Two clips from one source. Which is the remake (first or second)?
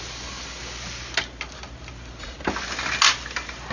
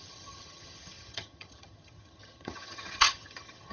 second